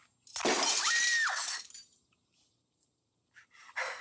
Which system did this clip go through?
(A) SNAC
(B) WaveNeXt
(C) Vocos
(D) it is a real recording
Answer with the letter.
D